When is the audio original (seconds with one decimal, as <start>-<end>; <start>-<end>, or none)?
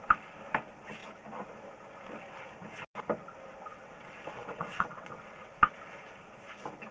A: 0.0-3.7; 5.5-6.9